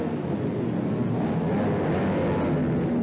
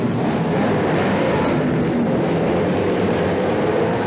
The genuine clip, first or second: first